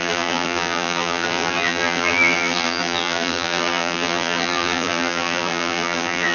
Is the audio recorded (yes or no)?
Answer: no